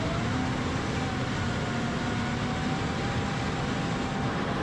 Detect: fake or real real